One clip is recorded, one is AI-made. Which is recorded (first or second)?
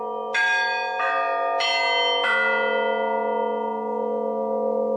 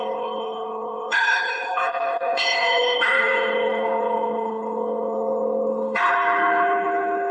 first